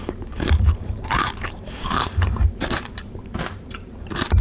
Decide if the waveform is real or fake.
fake